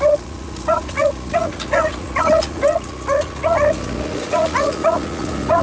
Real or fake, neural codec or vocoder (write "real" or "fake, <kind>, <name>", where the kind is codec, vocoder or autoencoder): fake, vocoder, Vocos